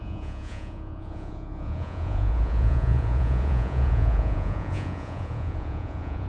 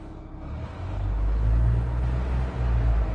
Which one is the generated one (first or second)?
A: first